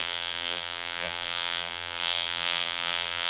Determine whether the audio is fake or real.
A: fake